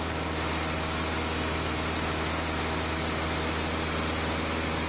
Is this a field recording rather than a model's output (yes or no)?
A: yes